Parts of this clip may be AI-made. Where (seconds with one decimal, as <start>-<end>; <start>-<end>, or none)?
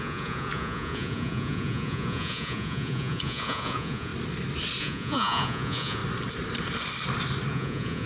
0.0-4.1; 4.8-6.0; 7.5-8.1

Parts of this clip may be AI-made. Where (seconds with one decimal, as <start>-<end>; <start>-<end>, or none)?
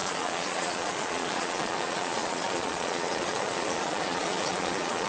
0.0-5.1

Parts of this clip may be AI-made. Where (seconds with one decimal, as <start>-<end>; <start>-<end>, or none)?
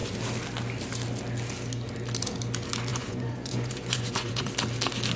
2.9-4.5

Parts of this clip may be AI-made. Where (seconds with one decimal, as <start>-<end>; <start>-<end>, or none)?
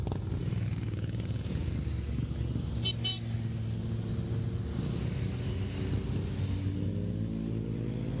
0.4-1.7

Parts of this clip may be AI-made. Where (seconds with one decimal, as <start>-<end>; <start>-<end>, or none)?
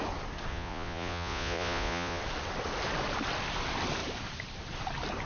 0.5-2.2